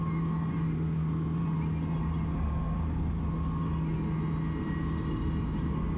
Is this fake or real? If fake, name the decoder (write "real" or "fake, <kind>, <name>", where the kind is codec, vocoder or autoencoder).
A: real